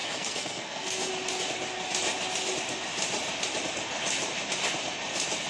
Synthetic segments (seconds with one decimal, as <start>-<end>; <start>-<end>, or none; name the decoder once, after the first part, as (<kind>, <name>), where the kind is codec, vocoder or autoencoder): 0.0-1.1 (codec, SNAC)

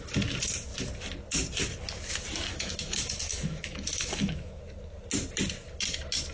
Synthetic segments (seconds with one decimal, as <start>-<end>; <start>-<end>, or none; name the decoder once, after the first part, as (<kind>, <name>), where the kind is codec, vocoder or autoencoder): 2.5-4.6 (autoencoder, DAC-VAE)

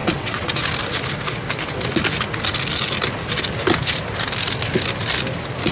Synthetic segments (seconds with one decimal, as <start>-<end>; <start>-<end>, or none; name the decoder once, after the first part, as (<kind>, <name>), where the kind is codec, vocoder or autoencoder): 0.0-0.6 (vocoder, WaveNeXt)